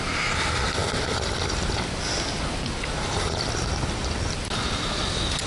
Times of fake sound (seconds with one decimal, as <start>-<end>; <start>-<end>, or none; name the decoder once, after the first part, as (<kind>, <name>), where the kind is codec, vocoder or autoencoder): none